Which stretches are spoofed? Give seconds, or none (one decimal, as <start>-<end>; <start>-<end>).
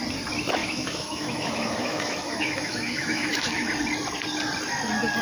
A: 0.6-3.7